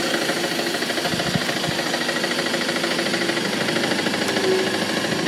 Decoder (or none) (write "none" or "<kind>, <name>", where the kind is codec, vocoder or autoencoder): none